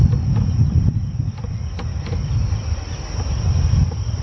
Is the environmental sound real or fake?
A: real